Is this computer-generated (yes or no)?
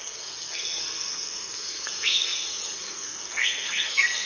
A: yes